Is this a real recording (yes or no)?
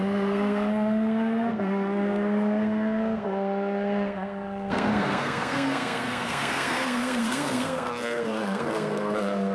no